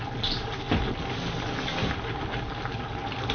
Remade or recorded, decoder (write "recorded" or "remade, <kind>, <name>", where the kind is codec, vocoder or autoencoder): recorded